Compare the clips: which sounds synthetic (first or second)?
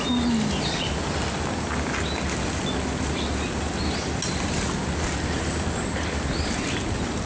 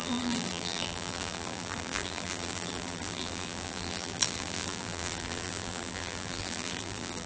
second